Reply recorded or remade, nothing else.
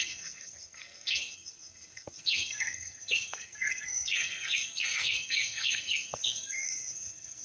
remade